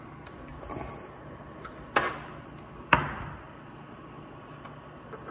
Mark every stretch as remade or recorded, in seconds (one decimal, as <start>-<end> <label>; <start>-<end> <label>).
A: 0.0-5.3 recorded